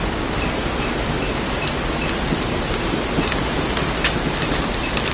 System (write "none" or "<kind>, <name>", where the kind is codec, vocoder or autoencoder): none